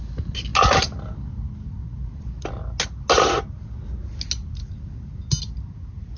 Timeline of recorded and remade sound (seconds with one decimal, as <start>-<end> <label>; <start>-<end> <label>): 0.0-6.2 recorded

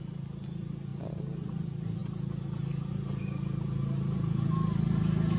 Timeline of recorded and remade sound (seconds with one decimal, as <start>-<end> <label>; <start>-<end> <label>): 0.0-5.4 recorded

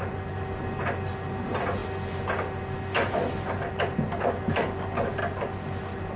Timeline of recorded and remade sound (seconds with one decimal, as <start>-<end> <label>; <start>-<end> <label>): 0.0-6.2 recorded

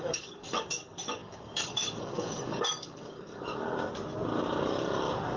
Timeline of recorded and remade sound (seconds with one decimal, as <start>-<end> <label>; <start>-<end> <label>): 0.0-3.5 remade; 3.5-5.4 recorded

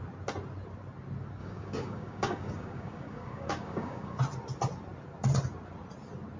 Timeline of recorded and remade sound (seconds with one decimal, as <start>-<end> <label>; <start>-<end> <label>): 0.0-1.4 recorded; 1.4-4.2 remade; 4.2-6.4 recorded

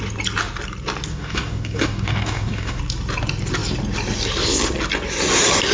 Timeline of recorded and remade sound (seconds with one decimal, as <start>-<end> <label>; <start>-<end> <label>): 0.0-1.1 recorded; 1.1-2.8 remade; 2.8-5.7 recorded

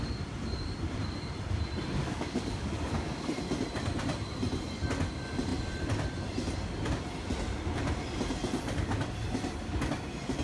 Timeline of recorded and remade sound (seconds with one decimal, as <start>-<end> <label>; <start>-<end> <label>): 0.0-2.0 recorded; 2.0-3.3 remade; 3.3-10.4 recorded

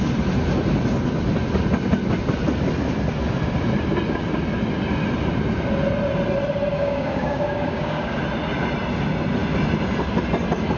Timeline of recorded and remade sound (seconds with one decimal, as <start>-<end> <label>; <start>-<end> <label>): 0.0-6.7 recorded; 6.7-8.2 remade; 8.2-10.8 recorded